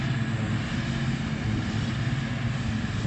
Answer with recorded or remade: recorded